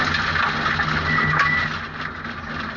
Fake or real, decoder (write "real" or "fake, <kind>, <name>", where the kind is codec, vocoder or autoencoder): real